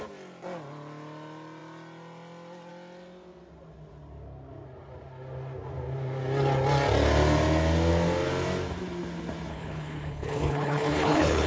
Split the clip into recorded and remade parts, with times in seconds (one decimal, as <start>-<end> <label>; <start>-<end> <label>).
0.0-9.5 recorded; 9.5-11.5 remade